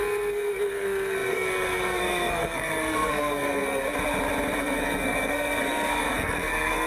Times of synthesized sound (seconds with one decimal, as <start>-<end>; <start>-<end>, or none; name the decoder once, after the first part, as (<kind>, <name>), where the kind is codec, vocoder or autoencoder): 0.0-3.8 (codec, SNAC); 4.6-6.9